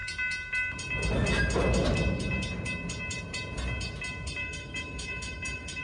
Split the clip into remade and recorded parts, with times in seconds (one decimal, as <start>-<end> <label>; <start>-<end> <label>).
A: 0.0-4.4 recorded; 4.4-5.8 remade